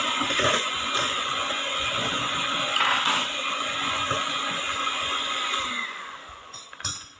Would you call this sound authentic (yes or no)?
no